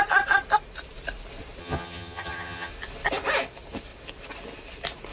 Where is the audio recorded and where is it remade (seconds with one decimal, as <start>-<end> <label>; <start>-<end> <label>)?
0.0-1.6 recorded; 1.6-2.7 remade; 2.7-5.1 recorded